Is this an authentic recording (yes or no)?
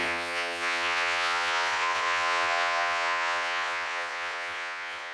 no